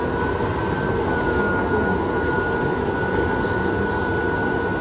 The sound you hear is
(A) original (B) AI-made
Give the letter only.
A